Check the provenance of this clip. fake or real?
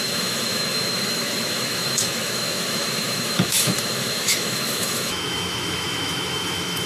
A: fake